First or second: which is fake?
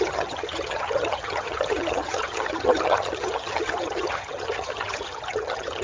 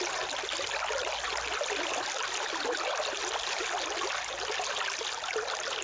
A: first